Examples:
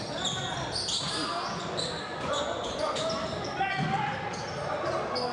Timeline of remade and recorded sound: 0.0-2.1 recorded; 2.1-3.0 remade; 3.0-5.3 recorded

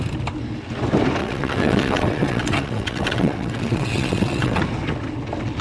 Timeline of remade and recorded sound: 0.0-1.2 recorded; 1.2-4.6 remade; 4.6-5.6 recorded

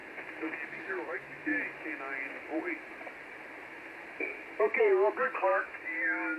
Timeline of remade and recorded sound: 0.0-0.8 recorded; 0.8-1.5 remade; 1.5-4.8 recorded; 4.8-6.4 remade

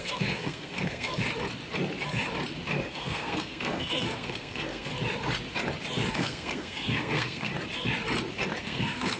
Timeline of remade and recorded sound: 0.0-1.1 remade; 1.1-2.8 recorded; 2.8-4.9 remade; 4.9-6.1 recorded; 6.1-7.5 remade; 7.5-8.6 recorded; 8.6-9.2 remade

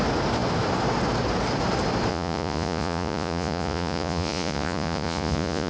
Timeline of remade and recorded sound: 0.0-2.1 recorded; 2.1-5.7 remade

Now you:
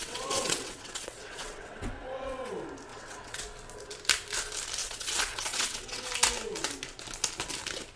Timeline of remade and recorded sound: 0.0-2.5 remade; 2.5-2.9 recorded; 2.9-3.4 remade; 3.4-4.8 recorded; 4.8-6.1 remade; 6.1-8.0 recorded

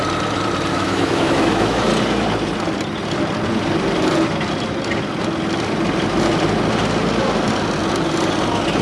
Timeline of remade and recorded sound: 0.0-0.7 recorded; 0.7-1.9 remade; 1.9-8.8 recorded

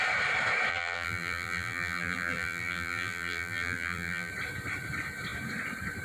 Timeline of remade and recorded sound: 0.0-0.7 recorded; 0.7-4.3 remade; 4.3-6.0 recorded